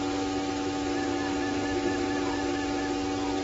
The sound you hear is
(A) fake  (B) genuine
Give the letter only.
B